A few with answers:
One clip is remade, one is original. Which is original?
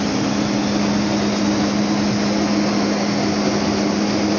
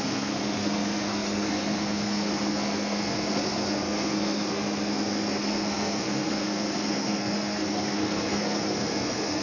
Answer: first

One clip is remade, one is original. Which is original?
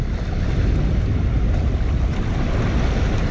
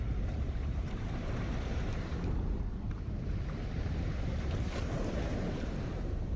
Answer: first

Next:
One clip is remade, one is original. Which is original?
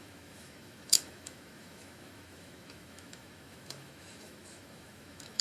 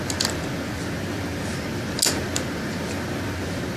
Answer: second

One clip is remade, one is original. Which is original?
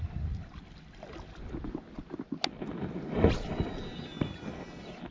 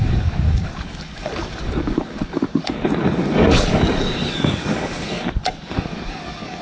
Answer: first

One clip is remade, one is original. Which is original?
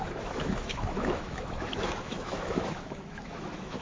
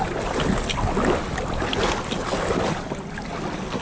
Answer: second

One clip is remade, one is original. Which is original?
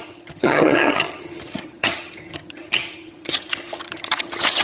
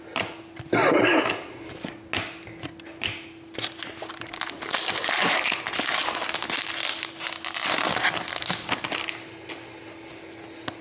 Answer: second